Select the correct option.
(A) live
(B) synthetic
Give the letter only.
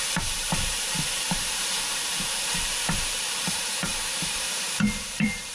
B